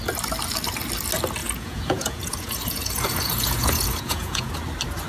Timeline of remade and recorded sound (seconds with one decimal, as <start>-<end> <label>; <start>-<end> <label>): 0.0-1.4 recorded; 1.4-4.5 remade; 4.5-5.1 recorded